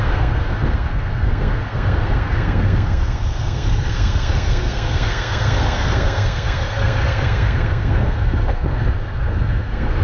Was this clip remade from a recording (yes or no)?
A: yes